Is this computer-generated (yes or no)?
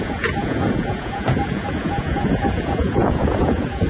yes